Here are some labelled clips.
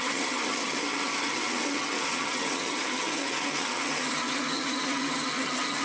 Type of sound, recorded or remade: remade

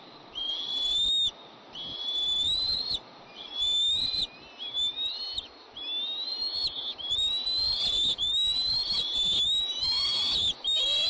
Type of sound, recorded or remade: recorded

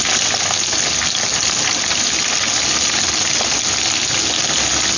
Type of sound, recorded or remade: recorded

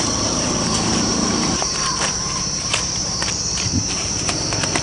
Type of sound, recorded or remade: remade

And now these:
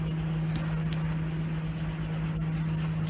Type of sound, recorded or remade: recorded